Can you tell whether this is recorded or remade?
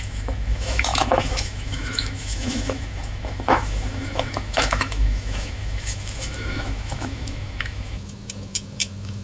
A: remade